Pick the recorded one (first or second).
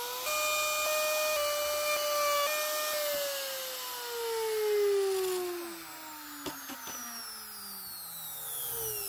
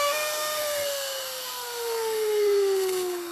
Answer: first